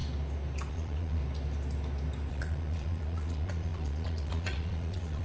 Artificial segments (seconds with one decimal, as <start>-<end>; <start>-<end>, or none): 0.7-1.2; 2.3-5.2